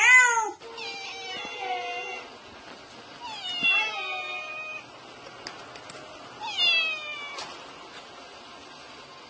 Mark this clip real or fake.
real